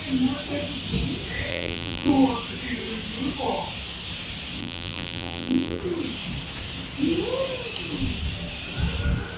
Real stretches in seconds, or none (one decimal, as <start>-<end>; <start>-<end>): 0.0-1.5; 2.1-4.6; 5.8-9.4